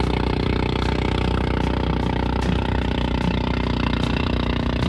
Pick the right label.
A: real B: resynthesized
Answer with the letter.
A